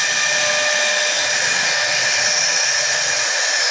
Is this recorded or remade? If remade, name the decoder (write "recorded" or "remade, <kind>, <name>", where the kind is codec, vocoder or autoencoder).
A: recorded